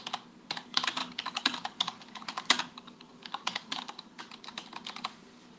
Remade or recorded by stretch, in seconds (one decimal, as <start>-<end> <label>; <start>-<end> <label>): 0.0-1.0 recorded; 1.0-4.2 remade; 4.2-5.6 recorded